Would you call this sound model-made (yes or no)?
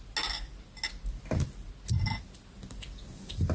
no